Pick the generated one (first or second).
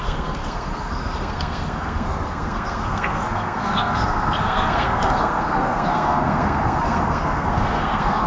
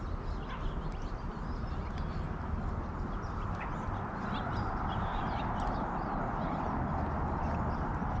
first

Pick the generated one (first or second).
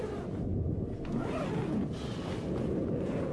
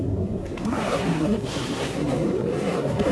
second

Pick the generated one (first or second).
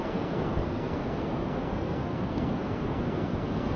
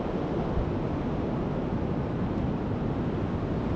first